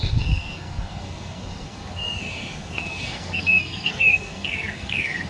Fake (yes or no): yes